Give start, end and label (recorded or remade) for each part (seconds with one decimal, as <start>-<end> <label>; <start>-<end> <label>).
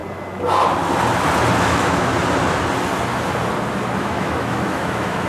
0.0-1.6 recorded; 1.6-2.1 remade; 2.1-4.0 recorded; 4.0-5.3 remade